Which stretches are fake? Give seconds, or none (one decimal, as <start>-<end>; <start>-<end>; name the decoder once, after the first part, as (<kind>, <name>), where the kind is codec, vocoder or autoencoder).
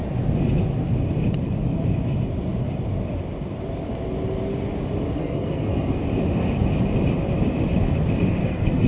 5.2-6.0 (codec, SNAC); 8.4-8.9